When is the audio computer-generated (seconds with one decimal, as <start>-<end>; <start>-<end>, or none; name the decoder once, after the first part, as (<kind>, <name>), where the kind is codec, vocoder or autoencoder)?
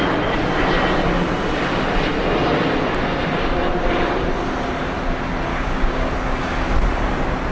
5.5-6.1 (codec, DAC)